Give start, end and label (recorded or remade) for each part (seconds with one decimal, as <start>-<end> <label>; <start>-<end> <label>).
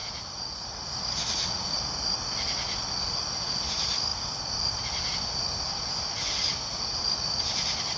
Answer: 0.0-8.0 recorded